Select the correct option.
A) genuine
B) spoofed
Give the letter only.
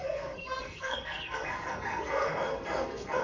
B